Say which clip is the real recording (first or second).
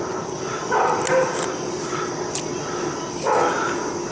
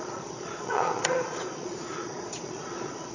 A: first